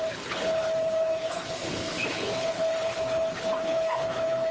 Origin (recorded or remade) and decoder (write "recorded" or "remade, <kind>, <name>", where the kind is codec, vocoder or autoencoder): remade, codec, HILCodec